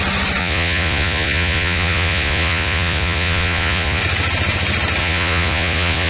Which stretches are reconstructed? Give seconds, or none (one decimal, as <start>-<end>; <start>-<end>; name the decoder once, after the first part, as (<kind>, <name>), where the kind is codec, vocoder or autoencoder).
0.4-4.0 (vocoder, Vocos); 5.0-6.1